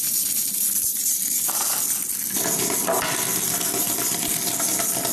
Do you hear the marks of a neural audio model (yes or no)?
no